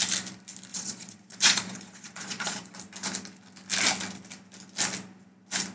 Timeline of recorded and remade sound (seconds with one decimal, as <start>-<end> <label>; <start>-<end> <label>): 0.0-0.7 recorded; 0.7-2.8 remade; 2.8-5.7 recorded